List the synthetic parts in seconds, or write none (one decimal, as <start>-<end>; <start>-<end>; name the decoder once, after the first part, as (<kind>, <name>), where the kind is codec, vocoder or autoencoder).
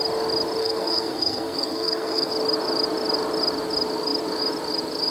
0.6-2.3 (codec, SNAC)